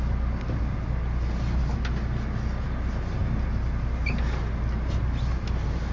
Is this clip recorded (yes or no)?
yes